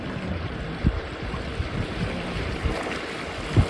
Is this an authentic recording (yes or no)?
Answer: no